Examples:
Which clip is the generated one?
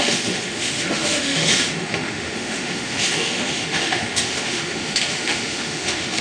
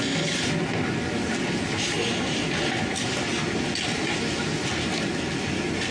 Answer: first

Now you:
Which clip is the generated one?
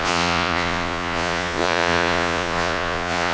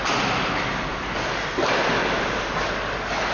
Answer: first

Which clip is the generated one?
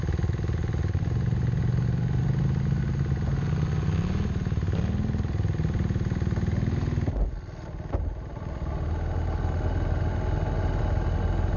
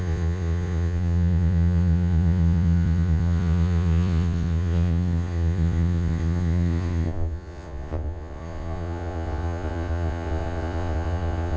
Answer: second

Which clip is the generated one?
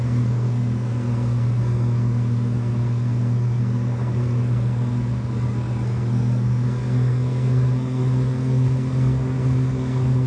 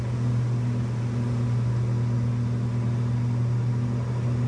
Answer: first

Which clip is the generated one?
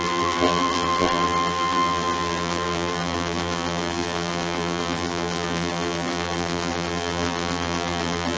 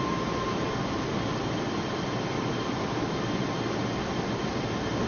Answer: first